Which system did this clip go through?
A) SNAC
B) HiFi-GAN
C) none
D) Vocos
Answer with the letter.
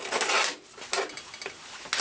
C